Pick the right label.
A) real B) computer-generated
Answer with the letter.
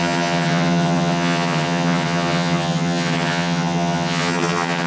B